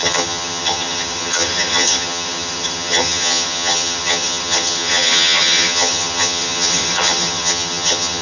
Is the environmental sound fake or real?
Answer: fake